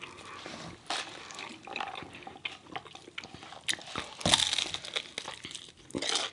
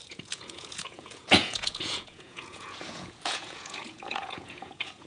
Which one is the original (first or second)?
first